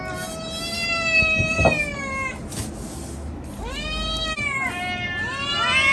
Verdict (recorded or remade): recorded